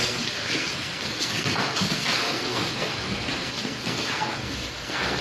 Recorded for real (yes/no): no